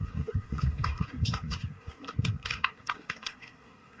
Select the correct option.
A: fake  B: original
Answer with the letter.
A